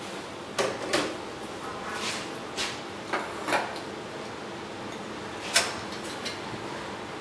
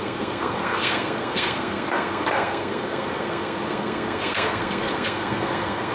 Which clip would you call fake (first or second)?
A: second